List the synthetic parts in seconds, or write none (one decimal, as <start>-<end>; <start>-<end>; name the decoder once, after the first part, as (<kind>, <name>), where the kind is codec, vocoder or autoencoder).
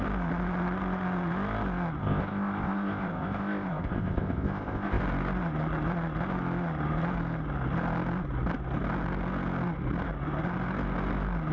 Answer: 2.0-5.0 (codec, ZipCodec)